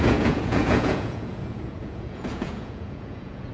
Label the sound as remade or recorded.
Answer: remade